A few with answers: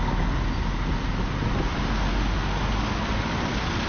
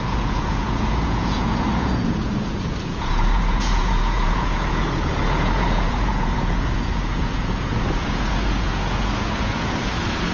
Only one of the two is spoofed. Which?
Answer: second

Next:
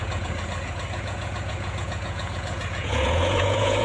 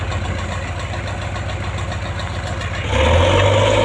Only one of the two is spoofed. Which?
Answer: first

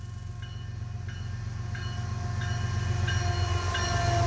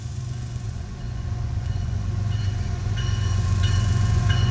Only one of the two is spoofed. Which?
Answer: second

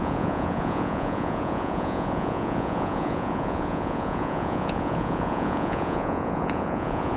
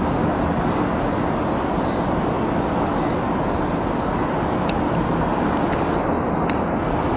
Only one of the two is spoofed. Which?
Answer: first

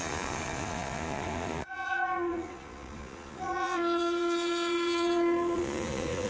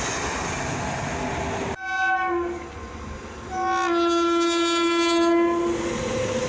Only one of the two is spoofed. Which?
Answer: first